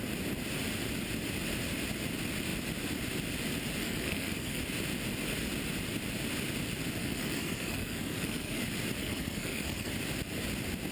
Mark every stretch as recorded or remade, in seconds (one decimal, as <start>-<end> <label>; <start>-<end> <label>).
0.0-3.8 recorded; 3.8-4.6 remade; 4.6-7.0 recorded; 7.0-8.6 remade; 8.6-9.0 recorded; 9.0-9.9 remade; 9.9-10.9 recorded